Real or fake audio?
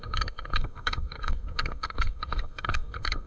fake